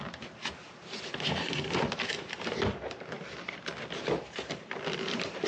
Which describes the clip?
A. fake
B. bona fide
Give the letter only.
B